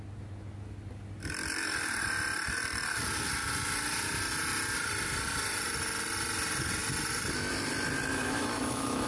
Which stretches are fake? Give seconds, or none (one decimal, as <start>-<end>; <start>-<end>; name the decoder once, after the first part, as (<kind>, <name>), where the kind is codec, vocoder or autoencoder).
8.1-9.1 (autoencoder, DAC-VAE)